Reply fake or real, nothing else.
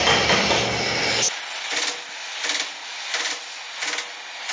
real